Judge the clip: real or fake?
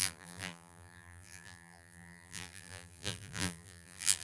fake